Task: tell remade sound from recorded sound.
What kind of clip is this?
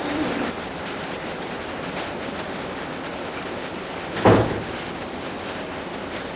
recorded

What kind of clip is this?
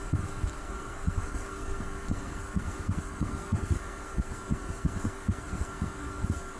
remade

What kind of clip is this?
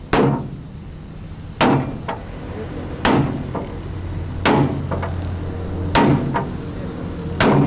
recorded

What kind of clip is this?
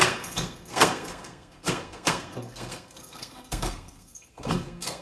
remade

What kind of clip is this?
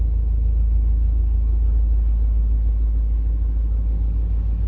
recorded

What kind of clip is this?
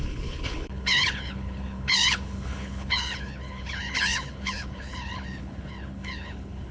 remade